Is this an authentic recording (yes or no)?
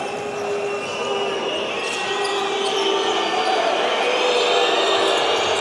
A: yes